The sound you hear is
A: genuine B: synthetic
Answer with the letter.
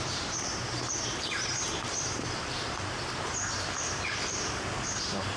B